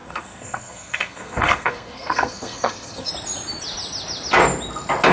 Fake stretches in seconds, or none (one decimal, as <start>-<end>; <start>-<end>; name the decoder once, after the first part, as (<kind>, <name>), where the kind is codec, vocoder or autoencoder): 0.0-3.1 (codec, SNAC)